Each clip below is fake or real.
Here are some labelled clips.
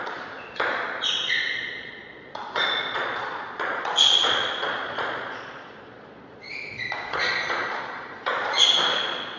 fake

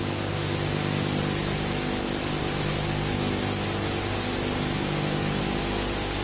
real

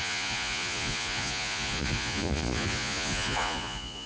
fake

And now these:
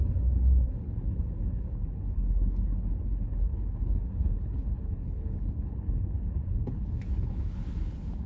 fake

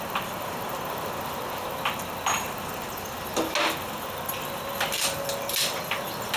real